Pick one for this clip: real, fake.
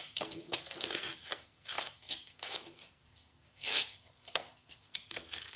fake